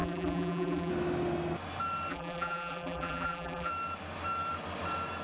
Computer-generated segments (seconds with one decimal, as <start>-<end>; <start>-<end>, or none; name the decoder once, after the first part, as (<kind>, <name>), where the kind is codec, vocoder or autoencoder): 0.0-0.9 (vocoder, BigVGAN v2); 2.1-3.7